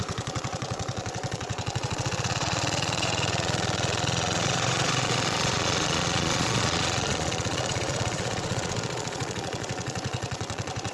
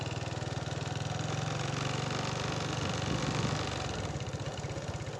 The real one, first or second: second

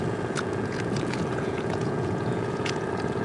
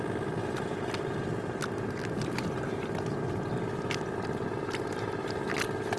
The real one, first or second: second